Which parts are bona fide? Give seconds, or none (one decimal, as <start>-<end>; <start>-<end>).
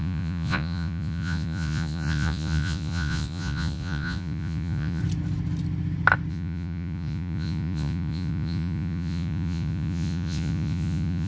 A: 5.0-6.3